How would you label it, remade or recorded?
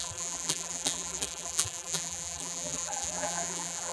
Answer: remade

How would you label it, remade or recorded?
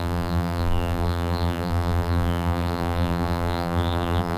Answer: remade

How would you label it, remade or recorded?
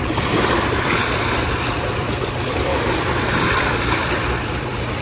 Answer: remade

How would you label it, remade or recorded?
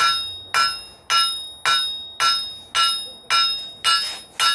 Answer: recorded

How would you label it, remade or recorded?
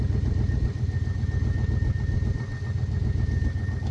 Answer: recorded